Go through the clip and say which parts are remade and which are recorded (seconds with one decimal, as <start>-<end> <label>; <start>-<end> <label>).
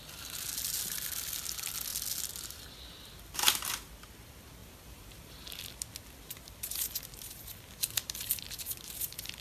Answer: 0.0-4.6 recorded; 4.6-5.6 remade; 5.6-9.4 recorded